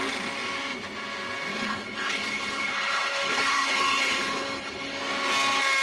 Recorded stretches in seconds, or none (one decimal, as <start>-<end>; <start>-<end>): 0.0-1.5; 5.0-5.8